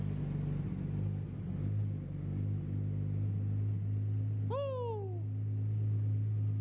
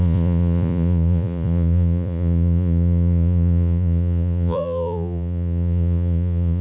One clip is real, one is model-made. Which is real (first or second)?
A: first